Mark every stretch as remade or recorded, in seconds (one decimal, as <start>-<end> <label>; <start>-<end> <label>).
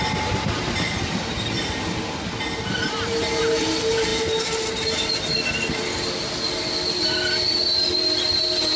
0.0-8.8 recorded